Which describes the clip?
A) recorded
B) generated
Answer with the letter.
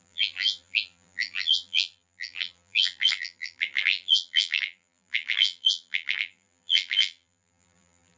B